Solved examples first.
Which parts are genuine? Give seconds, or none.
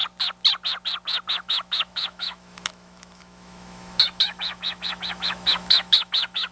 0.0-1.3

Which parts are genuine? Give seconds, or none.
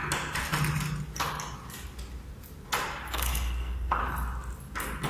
0.0-3.1; 4.0-5.1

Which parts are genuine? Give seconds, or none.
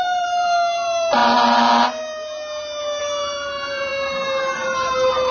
1.2-3.0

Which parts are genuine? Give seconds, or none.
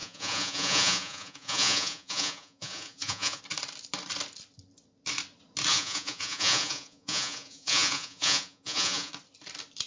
3.4-5.7; 9.1-9.9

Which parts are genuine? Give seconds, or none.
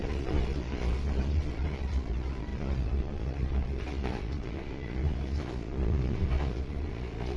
none